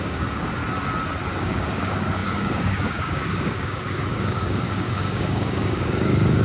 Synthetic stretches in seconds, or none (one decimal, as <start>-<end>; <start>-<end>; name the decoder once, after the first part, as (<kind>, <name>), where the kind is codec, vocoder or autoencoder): 0.0-0.6 (codec, DAC); 1.4-6.4